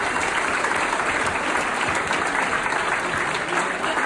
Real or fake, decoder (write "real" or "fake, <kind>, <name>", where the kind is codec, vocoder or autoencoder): fake, vocoder, BigVGAN v2